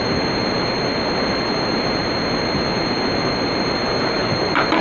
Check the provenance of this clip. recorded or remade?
remade